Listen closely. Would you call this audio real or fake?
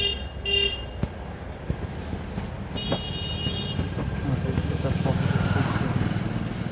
real